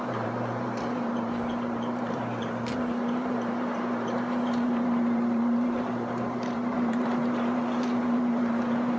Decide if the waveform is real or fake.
fake